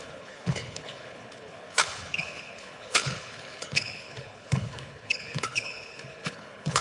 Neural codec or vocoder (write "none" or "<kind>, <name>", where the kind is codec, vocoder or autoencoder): codec, HILCodec